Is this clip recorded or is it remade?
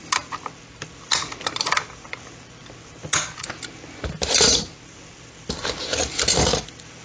recorded